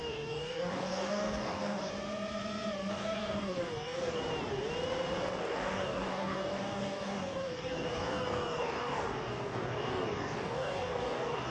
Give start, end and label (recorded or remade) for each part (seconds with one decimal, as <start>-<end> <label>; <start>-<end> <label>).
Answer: 0.0-1.9 remade; 1.9-2.9 recorded; 2.9-4.2 remade; 4.2-5.4 recorded; 5.4-11.5 remade